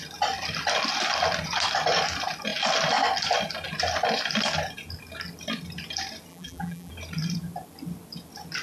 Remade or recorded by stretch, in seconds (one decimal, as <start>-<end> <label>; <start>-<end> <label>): 0.0-6.3 recorded; 6.3-6.9 remade; 6.9-8.6 recorded